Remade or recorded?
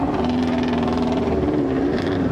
remade